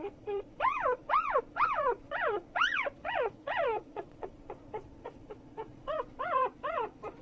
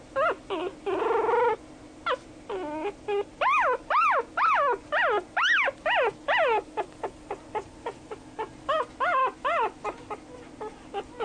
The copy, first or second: first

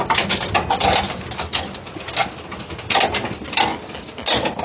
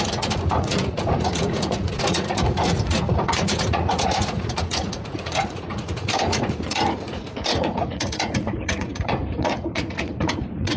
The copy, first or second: second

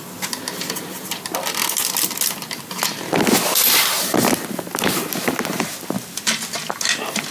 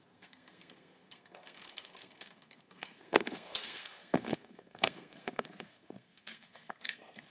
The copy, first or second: second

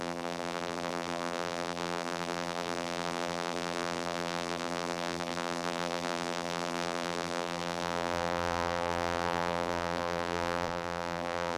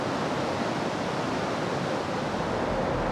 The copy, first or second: first